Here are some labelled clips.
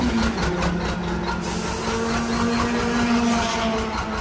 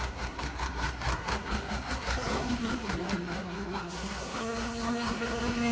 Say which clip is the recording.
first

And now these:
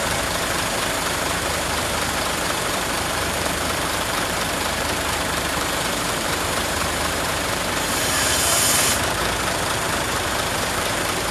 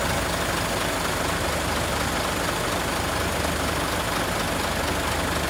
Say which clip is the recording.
second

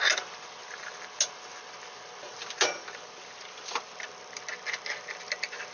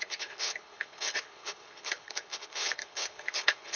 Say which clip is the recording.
first